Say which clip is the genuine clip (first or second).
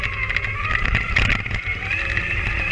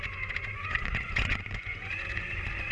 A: first